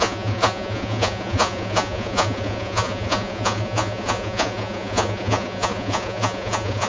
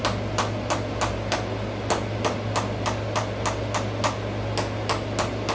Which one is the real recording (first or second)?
second